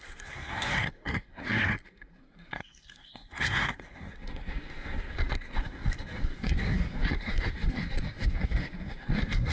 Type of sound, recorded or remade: remade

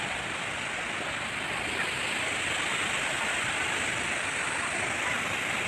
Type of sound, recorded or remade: recorded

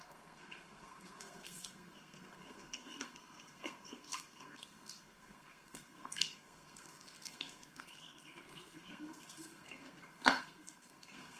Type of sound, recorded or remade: remade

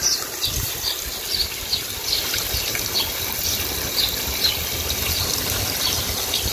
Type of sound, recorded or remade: recorded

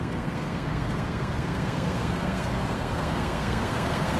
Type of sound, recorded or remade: remade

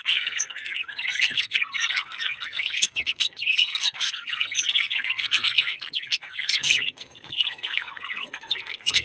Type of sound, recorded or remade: remade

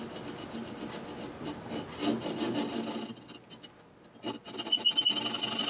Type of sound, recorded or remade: recorded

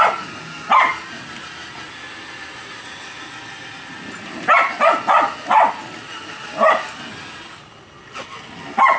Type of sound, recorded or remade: recorded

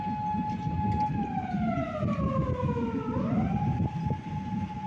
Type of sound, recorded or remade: recorded